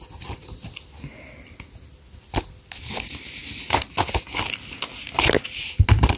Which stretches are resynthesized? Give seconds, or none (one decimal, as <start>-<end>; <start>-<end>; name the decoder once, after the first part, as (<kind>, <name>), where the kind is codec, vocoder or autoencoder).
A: none